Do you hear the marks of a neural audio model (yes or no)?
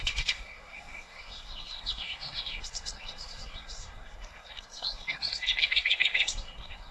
yes